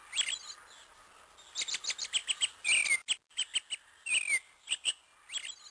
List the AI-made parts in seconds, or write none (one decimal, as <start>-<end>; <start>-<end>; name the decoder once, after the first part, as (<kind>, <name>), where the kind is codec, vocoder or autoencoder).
none